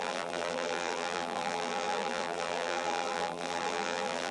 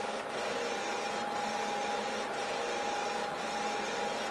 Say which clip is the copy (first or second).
first